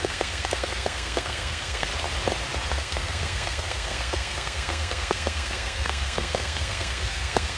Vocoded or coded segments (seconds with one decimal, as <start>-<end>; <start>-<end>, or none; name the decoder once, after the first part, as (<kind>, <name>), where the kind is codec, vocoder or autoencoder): 0.0-1.9 (codec, SNAC); 2.7-7.6